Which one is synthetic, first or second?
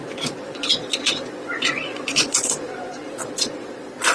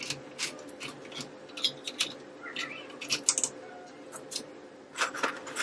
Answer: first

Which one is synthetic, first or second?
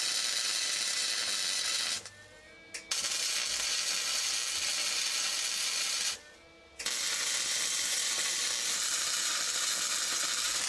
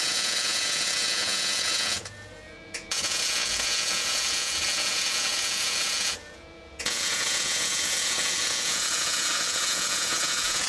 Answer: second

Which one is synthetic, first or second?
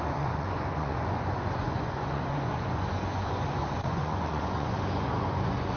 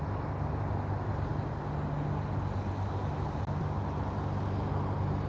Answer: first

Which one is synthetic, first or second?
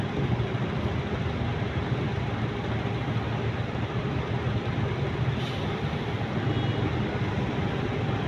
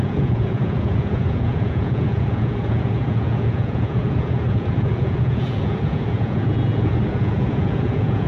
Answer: second